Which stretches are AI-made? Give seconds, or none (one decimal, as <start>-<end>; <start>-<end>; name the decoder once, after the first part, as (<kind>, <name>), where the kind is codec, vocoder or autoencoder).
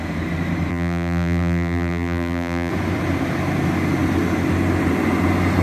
0.7-2.7 (vocoder, BigVGAN v2)